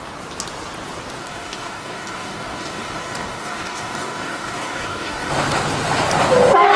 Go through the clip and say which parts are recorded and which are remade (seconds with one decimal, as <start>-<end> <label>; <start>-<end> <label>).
0.0-1.2 recorded; 1.2-5.3 remade; 5.3-6.8 recorded